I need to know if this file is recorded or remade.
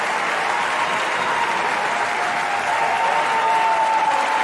recorded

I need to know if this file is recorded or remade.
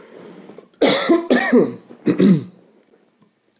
recorded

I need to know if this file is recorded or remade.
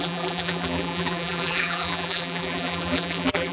remade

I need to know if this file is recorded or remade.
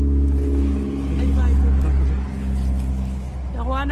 recorded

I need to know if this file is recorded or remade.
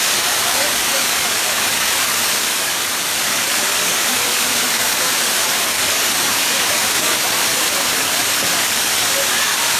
remade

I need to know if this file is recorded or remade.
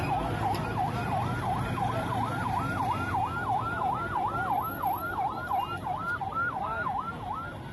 recorded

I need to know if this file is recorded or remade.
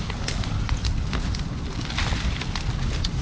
recorded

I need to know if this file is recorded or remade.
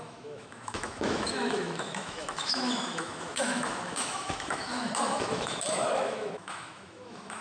remade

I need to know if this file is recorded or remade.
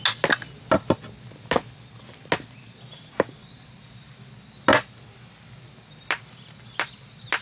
recorded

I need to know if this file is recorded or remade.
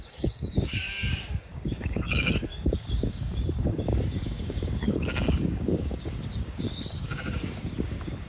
remade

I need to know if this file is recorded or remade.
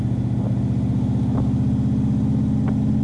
recorded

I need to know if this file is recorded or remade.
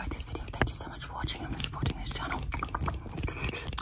recorded